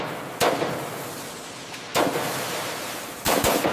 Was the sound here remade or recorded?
recorded